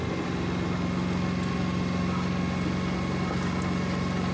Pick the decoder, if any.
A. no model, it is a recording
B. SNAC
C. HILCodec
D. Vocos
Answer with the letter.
A